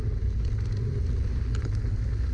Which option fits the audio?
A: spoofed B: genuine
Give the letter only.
B